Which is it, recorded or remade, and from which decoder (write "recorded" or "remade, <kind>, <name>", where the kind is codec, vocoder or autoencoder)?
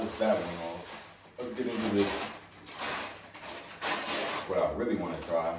recorded